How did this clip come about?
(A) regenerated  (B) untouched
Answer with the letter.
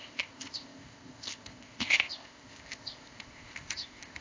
A